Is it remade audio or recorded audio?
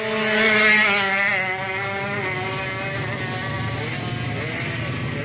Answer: recorded